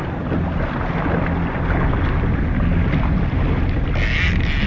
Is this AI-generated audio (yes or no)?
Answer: no